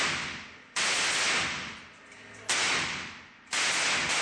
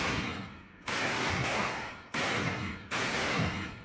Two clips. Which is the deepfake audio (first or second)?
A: second